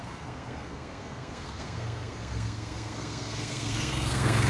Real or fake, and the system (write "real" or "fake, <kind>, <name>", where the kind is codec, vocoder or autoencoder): fake, codec, SNAC